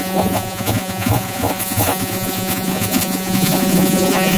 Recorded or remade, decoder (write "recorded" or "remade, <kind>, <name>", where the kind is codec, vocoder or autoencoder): remade, vocoder, Vocos